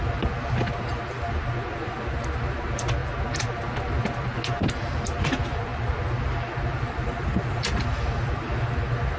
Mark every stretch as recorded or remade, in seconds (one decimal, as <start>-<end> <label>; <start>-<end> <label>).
0.0-3.0 remade; 3.0-5.0 recorded; 5.0-9.2 remade